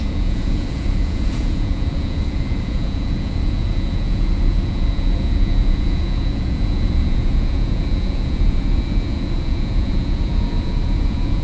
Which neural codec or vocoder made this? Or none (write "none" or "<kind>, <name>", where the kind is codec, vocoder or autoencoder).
vocoder, Vocos